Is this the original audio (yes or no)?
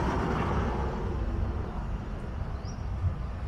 no